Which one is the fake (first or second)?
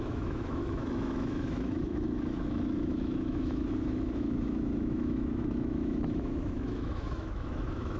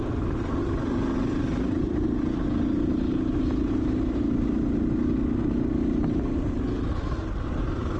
first